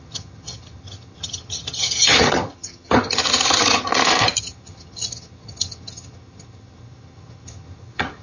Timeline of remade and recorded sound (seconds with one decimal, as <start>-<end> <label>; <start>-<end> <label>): 0.0-3.9 remade; 3.9-4.4 recorded; 4.4-8.2 remade